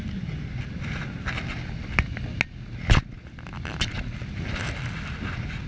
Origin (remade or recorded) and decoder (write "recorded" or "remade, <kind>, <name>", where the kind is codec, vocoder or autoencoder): recorded